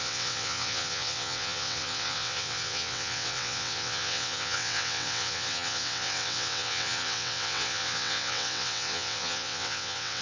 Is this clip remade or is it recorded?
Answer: remade